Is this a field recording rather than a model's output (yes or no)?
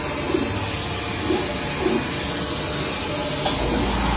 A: yes